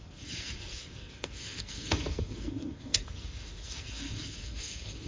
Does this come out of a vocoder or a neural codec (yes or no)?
yes